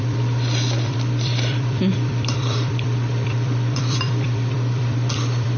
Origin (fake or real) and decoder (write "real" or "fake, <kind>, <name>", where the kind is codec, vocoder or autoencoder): fake, vocoder, BigVGAN v2